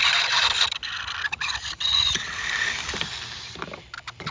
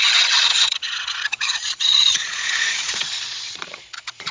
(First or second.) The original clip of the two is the first